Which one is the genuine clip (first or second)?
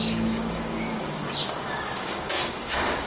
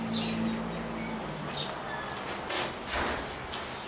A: second